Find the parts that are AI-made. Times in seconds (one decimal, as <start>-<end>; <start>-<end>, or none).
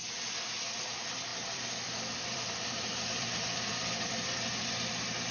1.3-4.5